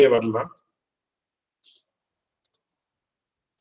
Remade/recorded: recorded